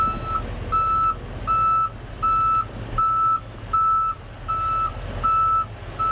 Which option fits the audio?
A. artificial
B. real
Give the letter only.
B